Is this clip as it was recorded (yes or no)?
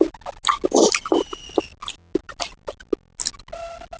yes